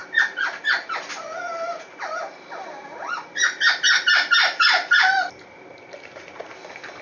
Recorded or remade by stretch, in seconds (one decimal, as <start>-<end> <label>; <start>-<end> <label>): 0.0-7.0 recorded